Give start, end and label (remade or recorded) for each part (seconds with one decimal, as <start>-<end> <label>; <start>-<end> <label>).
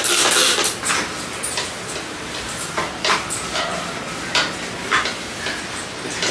0.0-6.3 recorded